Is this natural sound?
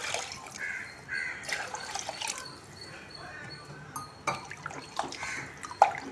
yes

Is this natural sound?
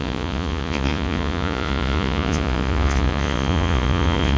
no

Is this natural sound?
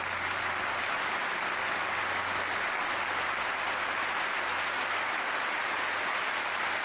yes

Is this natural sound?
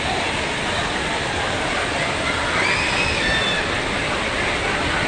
yes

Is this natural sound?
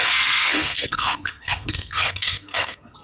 no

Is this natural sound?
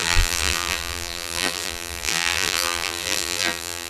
no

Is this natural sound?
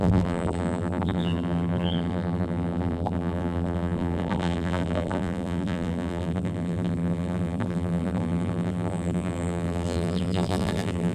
no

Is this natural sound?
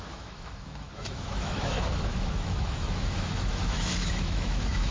no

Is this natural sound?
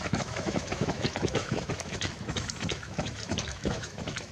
no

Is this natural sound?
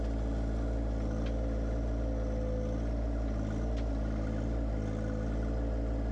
yes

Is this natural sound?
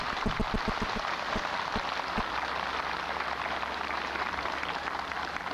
yes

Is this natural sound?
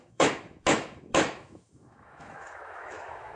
no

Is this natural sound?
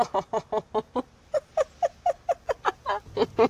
yes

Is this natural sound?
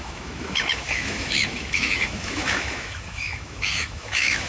no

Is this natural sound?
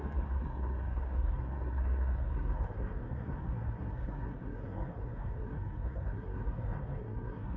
no